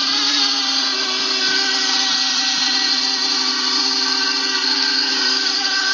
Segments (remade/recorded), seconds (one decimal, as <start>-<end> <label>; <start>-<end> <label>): 0.0-4.4 recorded; 4.4-5.1 remade; 5.1-5.9 recorded